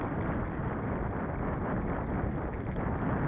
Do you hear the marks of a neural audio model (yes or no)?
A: no